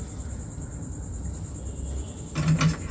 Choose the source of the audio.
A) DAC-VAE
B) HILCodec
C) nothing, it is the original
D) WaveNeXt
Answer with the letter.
C